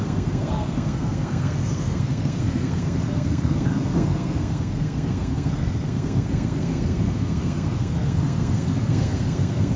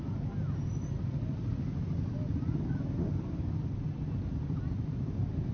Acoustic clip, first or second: second